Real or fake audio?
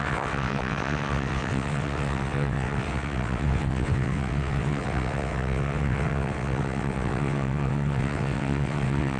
fake